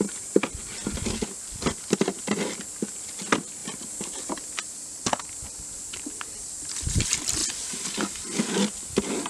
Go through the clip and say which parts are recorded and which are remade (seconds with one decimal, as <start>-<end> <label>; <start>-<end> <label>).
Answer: 0.0-9.3 recorded